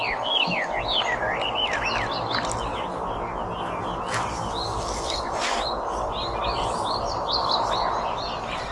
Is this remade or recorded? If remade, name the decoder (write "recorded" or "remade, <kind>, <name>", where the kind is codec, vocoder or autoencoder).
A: recorded